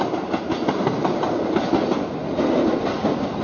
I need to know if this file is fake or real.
real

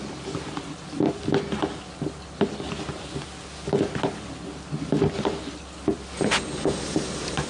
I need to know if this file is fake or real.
real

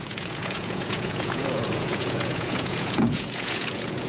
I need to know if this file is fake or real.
fake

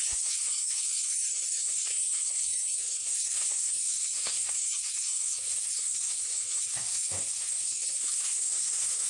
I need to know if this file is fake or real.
fake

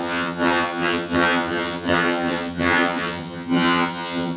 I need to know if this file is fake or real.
fake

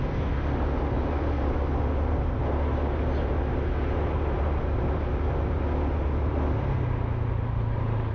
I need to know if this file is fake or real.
real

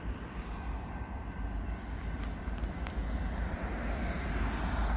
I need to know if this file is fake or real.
real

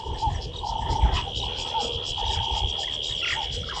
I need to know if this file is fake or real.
real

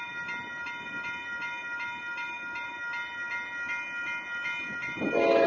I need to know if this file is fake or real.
real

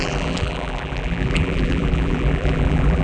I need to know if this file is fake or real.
fake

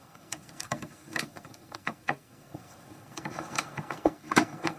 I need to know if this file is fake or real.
fake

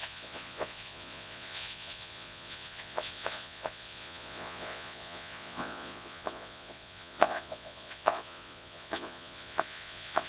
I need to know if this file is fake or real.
fake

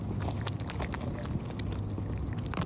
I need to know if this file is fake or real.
real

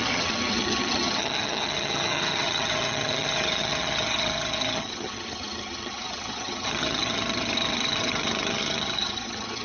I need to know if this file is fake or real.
fake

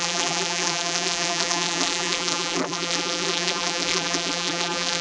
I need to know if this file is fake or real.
fake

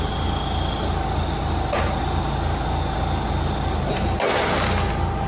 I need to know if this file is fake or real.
real